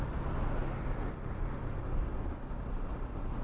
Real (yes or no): yes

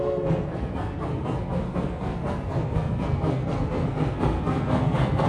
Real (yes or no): no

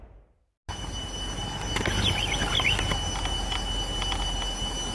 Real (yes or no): yes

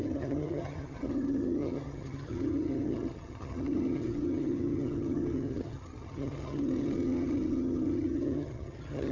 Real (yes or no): no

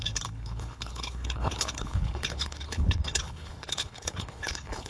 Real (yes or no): no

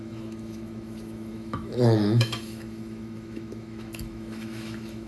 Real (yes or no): no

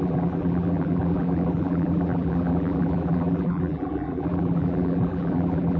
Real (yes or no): no